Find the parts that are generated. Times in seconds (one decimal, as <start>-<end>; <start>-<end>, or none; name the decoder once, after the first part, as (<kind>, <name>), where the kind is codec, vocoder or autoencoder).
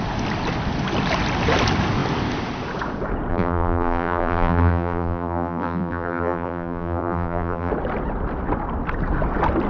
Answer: 3.3-7.7 (vocoder, BigVGAN v2)